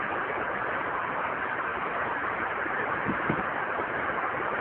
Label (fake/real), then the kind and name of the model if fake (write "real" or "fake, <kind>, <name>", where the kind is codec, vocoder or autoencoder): fake, vocoder, BigVGAN v2